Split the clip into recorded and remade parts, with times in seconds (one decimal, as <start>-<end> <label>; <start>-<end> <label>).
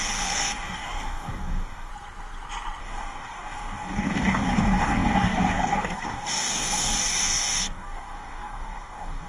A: 0.0-1.9 remade; 1.9-2.8 recorded; 2.8-9.3 remade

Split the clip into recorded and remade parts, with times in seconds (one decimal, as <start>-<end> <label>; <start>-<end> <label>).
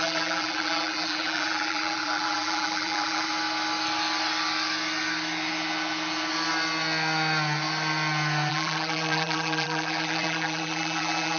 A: 0.0-3.3 remade; 3.3-8.5 recorded; 8.5-11.4 remade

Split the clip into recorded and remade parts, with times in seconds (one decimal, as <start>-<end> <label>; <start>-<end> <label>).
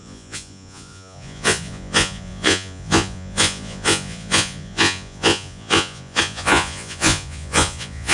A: 0.0-8.1 remade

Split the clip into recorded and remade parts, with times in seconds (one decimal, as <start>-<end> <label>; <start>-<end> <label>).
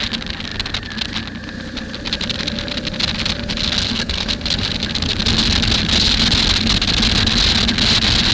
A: 0.0-3.8 recorded; 3.8-4.3 remade; 4.3-8.3 recorded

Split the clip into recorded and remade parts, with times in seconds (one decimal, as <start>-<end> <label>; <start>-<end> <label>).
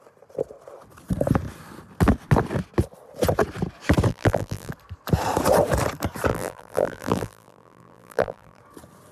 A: 0.0-4.1 recorded; 4.1-4.7 remade; 4.7-6.3 recorded; 6.3-8.6 remade; 8.6-9.1 recorded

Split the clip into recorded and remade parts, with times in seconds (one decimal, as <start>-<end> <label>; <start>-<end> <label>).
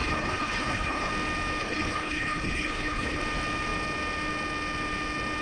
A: 0.0-1.1 remade; 1.1-1.6 recorded; 1.6-3.2 remade; 3.2-5.4 recorded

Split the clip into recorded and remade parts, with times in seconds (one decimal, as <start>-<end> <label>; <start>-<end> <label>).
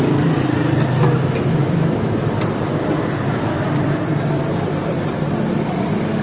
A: 0.0-1.6 recorded; 1.6-5.3 remade; 5.3-6.2 recorded